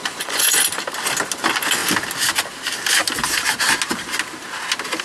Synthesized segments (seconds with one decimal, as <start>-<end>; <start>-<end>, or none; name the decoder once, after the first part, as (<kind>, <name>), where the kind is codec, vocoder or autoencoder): 0.0-0.6 (vocoder, Vocos)